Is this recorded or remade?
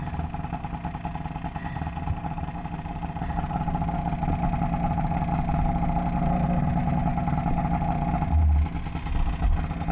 recorded